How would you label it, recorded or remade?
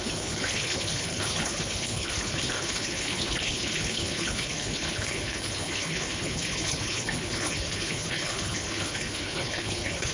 remade